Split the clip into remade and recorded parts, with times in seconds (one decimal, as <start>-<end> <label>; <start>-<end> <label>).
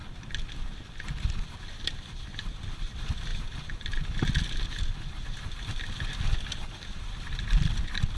0.0-8.2 recorded